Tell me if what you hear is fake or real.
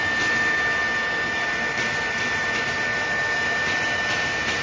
real